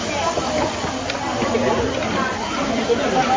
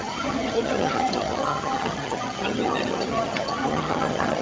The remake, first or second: second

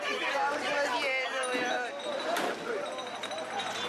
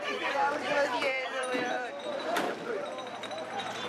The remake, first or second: second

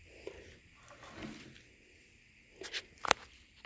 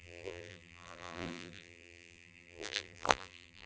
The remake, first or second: second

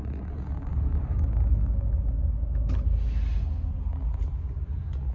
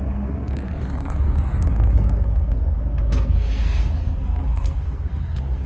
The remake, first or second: second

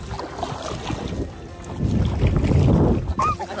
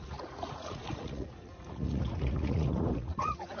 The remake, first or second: second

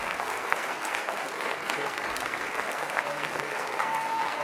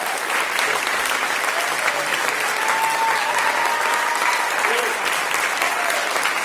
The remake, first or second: first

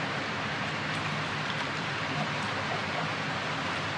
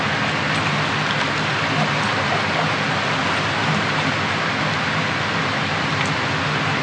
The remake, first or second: first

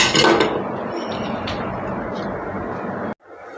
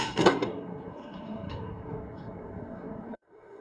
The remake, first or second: second